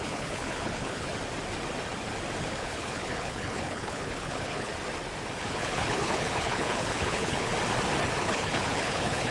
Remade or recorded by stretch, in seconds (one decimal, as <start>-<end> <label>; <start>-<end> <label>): 0.0-1.1 remade; 1.1-2.4 recorded; 2.4-4.7 remade; 4.7-5.4 recorded; 5.4-7.5 remade; 7.5-8.2 recorded; 8.2-9.3 remade